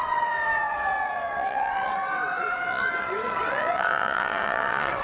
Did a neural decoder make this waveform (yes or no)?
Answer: yes